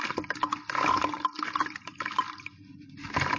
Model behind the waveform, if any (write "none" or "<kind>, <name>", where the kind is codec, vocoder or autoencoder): none